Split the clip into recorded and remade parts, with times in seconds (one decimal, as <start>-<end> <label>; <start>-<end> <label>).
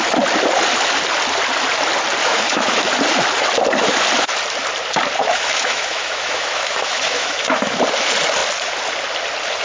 0.0-2.2 recorded; 2.2-2.8 remade; 2.8-5.2 recorded; 5.2-7.8 remade; 7.8-9.6 recorded